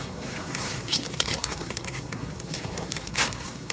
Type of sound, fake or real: fake